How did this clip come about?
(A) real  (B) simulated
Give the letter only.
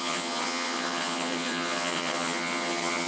B